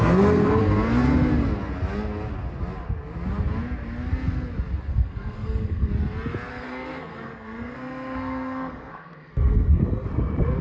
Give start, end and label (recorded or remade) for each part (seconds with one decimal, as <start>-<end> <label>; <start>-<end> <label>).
0.0-0.6 remade; 0.6-4.9 recorded; 4.9-5.9 remade; 5.9-6.5 recorded; 6.5-9.8 remade; 9.8-10.6 recorded